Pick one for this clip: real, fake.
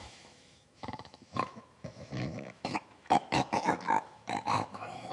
fake